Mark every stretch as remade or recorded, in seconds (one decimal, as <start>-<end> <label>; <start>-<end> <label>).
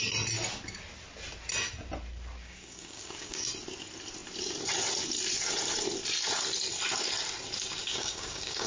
0.0-2.4 recorded; 2.4-3.5 remade; 3.5-7.8 recorded; 7.8-8.7 remade